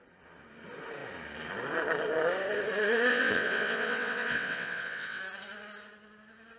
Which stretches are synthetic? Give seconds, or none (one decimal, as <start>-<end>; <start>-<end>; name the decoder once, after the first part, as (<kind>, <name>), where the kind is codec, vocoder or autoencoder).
3.1-5.2 (vocoder, WaveNeXt)